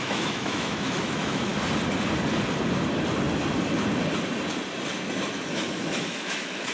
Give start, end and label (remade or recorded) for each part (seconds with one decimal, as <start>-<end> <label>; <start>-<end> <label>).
0.0-1.5 remade; 1.5-5.5 recorded; 5.5-6.7 remade